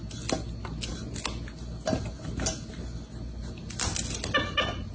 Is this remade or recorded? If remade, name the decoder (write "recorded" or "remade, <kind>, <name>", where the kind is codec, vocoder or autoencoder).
recorded